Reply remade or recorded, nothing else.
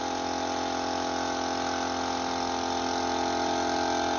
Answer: recorded